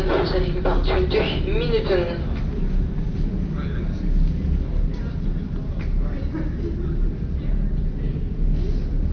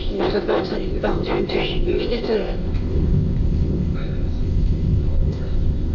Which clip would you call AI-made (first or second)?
second